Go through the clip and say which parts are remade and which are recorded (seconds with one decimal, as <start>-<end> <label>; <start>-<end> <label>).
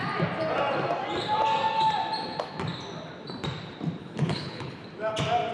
0.0-4.0 recorded; 4.0-4.8 remade; 4.8-5.5 recorded